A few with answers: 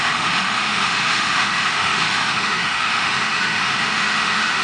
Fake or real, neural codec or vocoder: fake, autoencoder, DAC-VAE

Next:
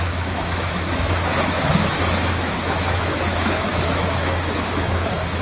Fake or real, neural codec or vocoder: fake, autoencoder, DAC-VAE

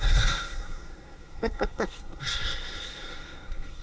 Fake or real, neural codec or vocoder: fake, codec, SNAC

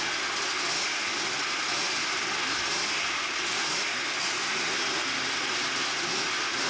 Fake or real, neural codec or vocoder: real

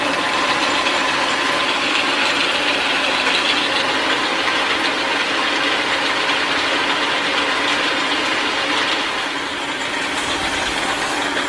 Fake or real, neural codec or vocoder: real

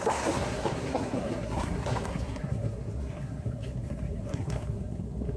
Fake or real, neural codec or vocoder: fake, codec, SNAC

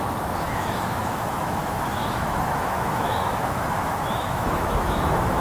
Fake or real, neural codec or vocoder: fake, autoencoder, DAC-VAE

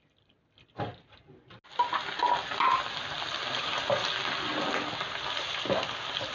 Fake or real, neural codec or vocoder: real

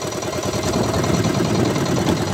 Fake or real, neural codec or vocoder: fake, vocoder, BigVGAN v2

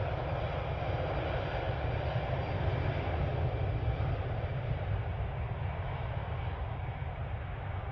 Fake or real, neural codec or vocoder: real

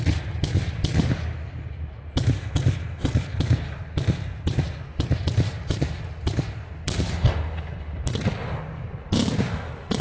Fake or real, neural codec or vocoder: real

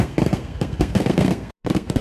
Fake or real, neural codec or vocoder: fake, codec, SNAC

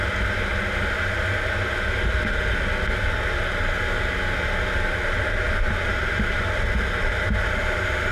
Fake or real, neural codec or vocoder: real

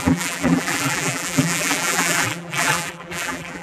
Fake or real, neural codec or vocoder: fake, vocoder, BigVGAN v2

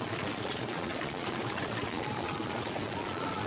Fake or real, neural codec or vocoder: fake, vocoder, Vocos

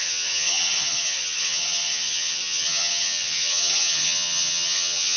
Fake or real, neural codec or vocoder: fake, vocoder, HiFi-GAN